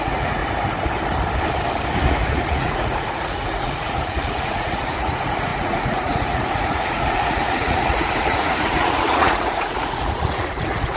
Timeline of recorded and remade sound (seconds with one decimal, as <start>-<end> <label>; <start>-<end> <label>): 0.0-0.4 remade; 0.4-2.1 recorded; 2.1-11.0 remade